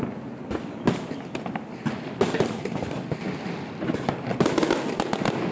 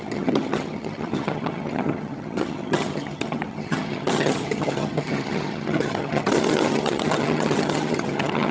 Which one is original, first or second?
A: first